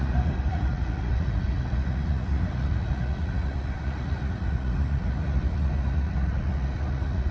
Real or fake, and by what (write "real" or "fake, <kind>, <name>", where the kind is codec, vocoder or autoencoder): fake, vocoder, Vocos